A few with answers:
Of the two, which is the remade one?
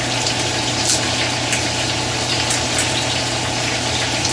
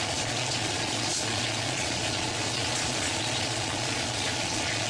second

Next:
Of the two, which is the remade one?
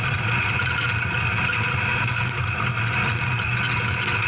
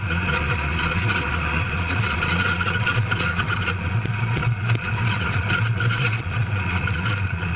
second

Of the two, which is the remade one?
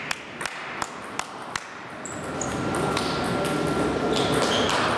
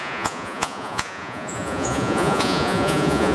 second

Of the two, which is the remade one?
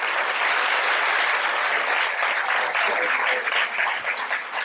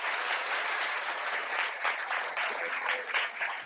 second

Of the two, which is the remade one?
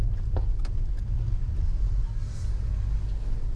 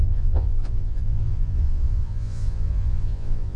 second